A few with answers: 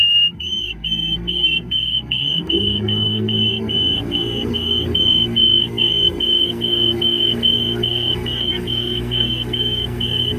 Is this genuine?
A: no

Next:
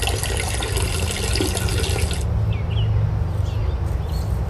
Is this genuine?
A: yes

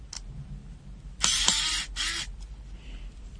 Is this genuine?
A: yes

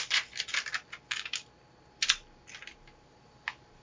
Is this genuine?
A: yes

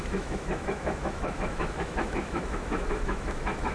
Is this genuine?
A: no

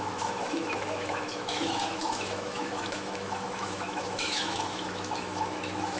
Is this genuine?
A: no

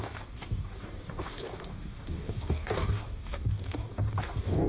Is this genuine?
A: no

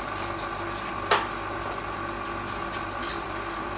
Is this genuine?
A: yes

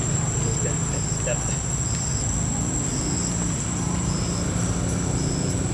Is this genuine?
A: yes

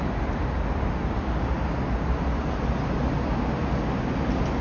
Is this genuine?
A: yes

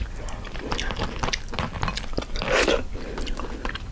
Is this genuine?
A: yes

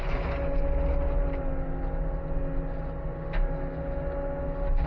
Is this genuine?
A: yes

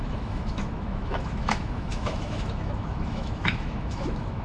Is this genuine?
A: no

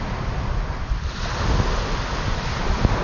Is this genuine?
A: yes